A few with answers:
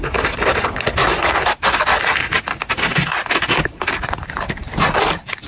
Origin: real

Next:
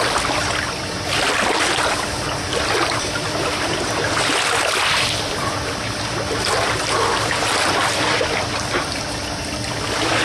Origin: fake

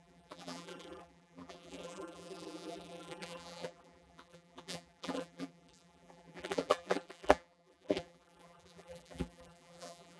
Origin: fake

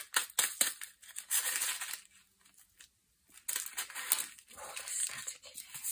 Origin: real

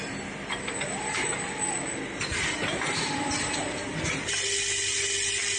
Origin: real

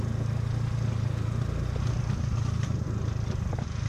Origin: real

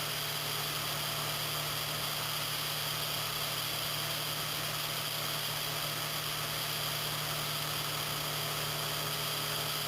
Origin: real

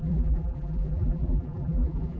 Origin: fake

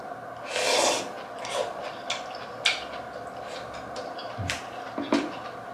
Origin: real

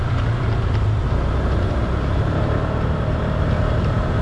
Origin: fake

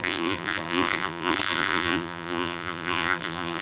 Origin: fake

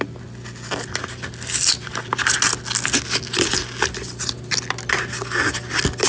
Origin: real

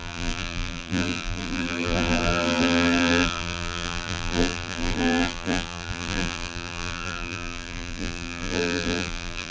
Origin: fake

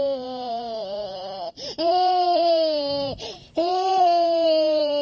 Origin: fake